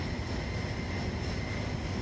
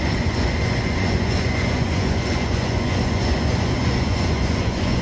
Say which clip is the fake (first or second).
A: second